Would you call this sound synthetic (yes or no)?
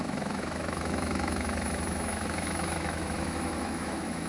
yes